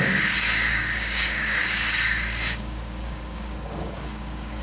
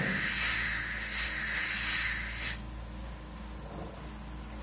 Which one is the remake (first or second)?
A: first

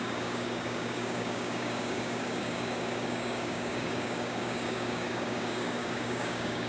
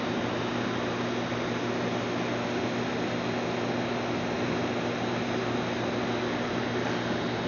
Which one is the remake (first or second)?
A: first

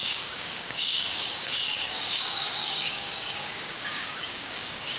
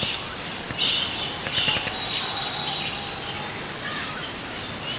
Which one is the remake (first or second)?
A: first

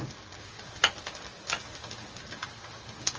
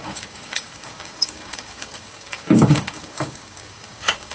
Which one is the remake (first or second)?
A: second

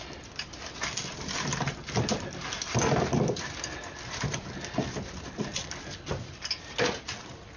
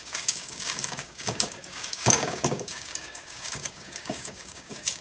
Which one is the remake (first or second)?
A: second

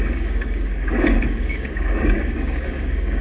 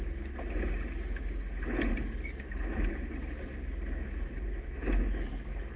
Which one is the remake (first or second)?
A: first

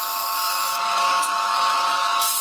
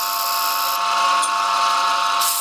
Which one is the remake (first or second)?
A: first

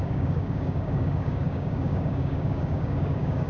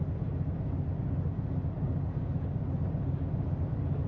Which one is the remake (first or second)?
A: first